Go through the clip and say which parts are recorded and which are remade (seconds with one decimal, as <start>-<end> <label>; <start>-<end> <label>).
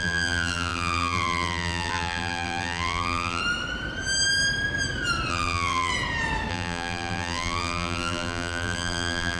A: 0.0-3.4 remade; 3.4-5.3 recorded; 5.3-5.9 remade; 5.9-6.5 recorded; 6.5-9.4 remade